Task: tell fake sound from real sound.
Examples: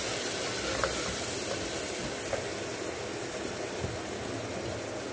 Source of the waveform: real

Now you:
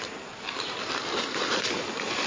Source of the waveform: real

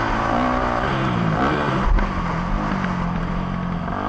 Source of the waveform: real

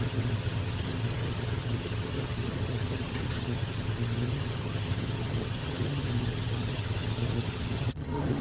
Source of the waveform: fake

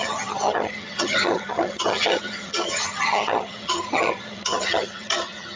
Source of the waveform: fake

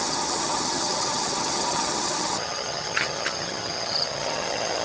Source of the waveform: fake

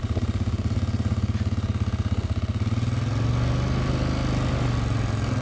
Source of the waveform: real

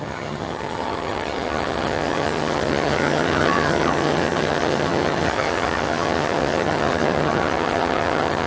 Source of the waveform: fake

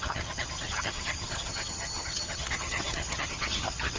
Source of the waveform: fake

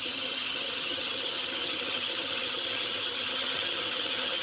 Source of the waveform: fake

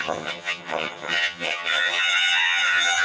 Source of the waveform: fake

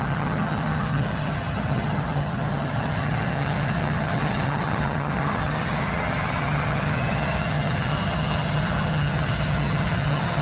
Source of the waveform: fake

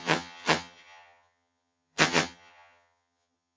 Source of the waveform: fake